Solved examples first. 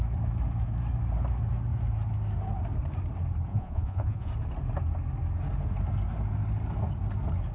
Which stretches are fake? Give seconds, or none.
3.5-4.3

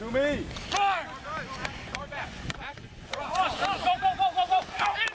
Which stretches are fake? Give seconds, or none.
1.6-3.6

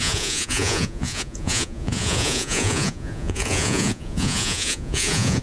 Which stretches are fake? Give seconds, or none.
0.0-5.4

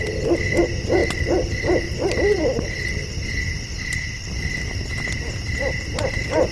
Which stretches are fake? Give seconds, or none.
none

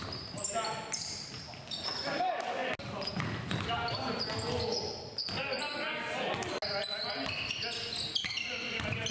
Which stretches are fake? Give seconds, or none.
none